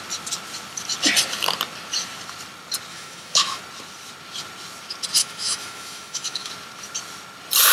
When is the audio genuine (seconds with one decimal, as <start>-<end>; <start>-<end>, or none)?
0.0-2.9; 3.6-5.2; 6.5-7.7